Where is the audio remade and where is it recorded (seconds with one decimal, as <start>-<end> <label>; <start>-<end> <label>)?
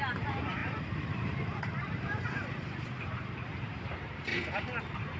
0.0-4.3 remade; 4.3-4.8 recorded; 4.8-5.2 remade